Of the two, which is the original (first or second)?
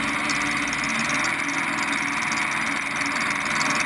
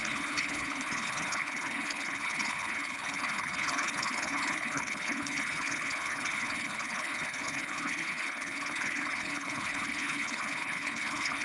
first